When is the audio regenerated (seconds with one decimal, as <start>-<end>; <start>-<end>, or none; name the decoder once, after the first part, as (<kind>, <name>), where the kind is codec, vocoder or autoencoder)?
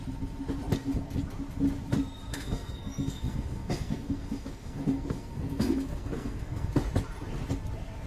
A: 2.3-6.7 (codec, SNAC)